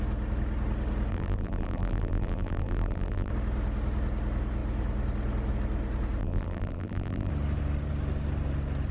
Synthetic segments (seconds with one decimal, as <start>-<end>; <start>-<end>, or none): 1.1-3.3; 6.2-7.3